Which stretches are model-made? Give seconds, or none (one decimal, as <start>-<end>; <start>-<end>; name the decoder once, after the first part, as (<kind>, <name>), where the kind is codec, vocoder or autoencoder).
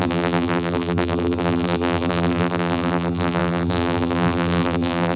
0.0-5.2 (vocoder, BigVGAN v2)